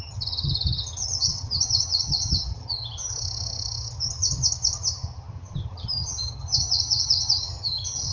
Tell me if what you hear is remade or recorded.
remade